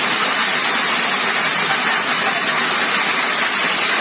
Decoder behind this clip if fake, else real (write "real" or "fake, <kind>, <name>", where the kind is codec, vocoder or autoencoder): real